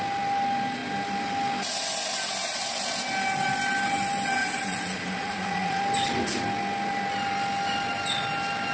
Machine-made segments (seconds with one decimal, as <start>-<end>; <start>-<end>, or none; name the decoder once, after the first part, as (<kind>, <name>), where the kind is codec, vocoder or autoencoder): 4.4-5.8 (vocoder, Vocos)